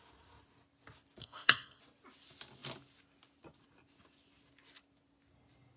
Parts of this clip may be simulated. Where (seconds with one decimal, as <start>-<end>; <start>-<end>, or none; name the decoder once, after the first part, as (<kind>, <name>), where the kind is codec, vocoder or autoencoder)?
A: 1.2-1.8 (codec, SNAC)